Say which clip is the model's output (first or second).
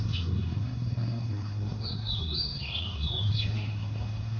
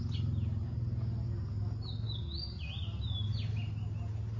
first